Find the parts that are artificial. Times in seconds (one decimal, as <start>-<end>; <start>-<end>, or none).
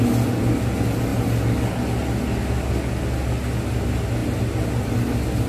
none